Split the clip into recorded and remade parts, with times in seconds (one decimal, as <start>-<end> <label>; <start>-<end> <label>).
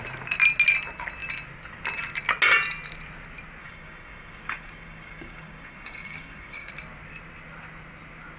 0.0-3.6 recorded; 3.6-6.7 remade; 6.7-8.4 recorded